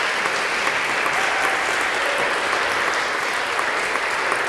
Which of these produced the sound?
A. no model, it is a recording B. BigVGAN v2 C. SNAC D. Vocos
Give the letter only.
A